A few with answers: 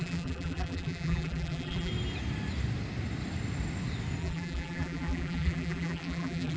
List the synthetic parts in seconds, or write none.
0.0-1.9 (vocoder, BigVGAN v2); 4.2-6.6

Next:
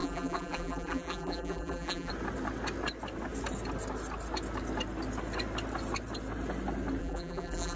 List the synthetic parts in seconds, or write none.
0.0-2.1 (vocoder, BigVGAN v2); 7.0-7.8

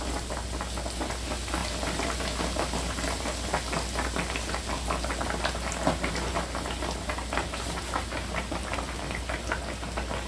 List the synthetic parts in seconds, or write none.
none

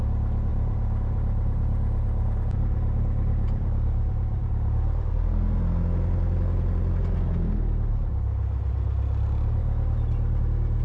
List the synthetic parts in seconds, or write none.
0.5-5.1 (vocoder, BigVGAN v2)

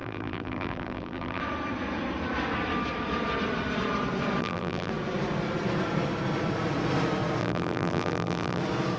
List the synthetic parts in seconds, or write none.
0.0-1.4 (vocoder, BigVGAN v2); 4.4-4.9; 7.4-8.6

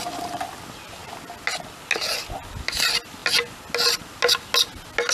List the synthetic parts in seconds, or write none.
none

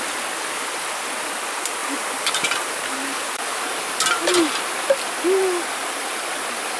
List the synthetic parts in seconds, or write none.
1.8-4.9 (vocoder, BigVGAN v2); 5.4-6.0